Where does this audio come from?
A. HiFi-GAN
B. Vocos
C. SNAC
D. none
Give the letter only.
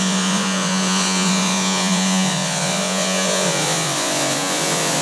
B